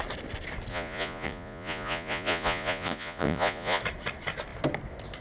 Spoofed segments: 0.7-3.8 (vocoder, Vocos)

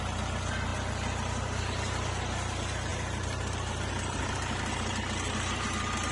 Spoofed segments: 0.0-6.1 (vocoder, BigVGAN v2)

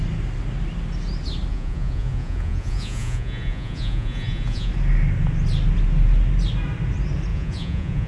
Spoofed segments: 1.5-4.7 (vocoder, Vocos); 7.3-8.1

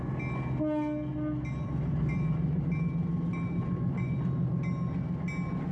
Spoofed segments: 1.1-4.5 (vocoder, BigVGAN v2)